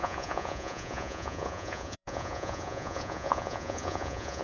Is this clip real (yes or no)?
no